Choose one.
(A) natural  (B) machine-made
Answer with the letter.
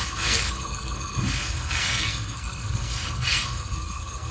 B